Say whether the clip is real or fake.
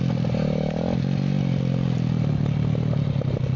real